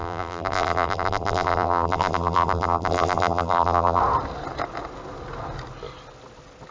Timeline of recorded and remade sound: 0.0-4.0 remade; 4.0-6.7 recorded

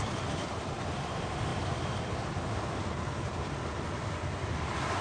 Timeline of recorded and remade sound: 0.0-1.5 remade; 1.5-4.5 recorded; 4.5-5.0 remade

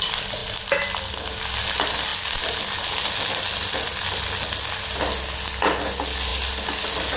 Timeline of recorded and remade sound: 0.0-7.2 recorded

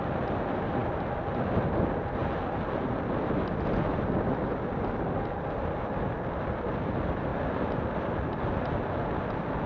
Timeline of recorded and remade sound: 0.0-7.3 recorded; 7.3-8.5 remade; 8.5-9.7 recorded

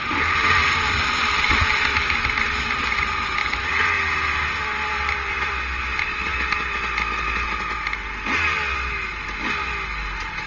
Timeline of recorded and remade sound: 0.0-2.8 remade; 2.8-3.4 recorded; 3.4-5.5 remade; 5.5-10.5 recorded

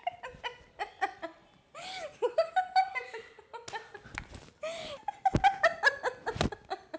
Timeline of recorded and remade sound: 0.0-7.0 recorded